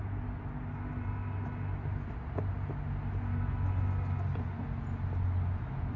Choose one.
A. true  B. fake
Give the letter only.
A